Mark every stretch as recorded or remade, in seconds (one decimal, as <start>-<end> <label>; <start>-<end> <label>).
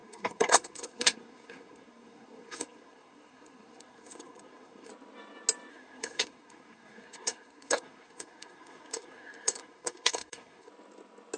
0.0-4.9 remade; 4.9-5.7 recorded; 5.7-10.7 remade; 10.7-11.4 recorded